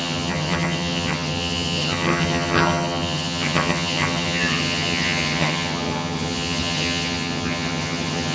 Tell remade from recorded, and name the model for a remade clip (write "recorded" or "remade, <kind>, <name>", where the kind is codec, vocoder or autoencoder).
remade, vocoder, HiFi-GAN